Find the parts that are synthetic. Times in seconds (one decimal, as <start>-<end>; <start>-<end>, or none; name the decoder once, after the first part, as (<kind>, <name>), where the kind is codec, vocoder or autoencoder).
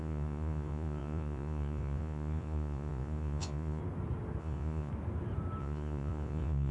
0.0-3.8 (vocoder, Vocos); 4.4-4.9; 5.6-6.7